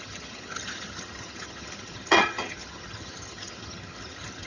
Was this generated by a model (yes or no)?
yes